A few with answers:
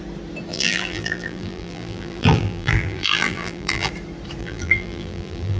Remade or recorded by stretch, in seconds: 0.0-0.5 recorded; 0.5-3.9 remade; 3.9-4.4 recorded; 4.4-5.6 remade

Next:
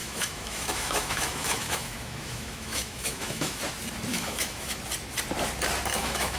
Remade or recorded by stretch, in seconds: 0.0-3.6 remade; 3.6-4.1 recorded; 4.1-4.8 remade; 4.8-5.9 recorded; 5.9-6.4 remade

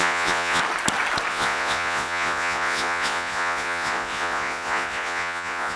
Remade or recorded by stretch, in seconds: 0.0-0.6 remade; 0.6-1.3 recorded; 1.3-5.8 remade

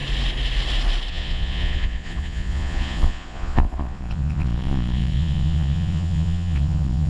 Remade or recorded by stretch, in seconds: 0.0-1.1 recorded; 1.1-7.1 remade